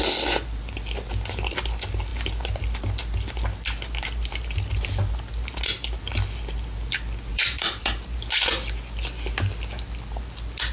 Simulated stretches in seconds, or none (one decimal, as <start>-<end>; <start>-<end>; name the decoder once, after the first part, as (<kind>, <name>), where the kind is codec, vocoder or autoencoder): 7.3-8.2 (vocoder, BigVGAN v2)